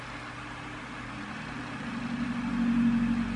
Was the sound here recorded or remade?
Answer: recorded